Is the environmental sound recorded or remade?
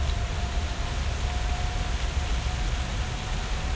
recorded